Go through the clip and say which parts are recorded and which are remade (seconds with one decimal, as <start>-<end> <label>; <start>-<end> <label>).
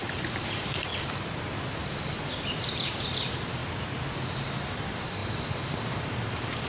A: 0.0-0.9 remade; 0.9-2.1 recorded; 2.1-3.6 remade; 3.6-4.7 recorded; 4.7-6.7 remade